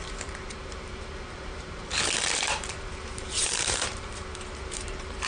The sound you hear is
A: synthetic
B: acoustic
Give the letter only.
A